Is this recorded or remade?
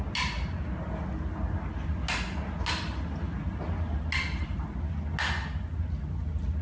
recorded